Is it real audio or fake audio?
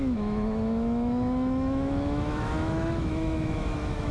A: fake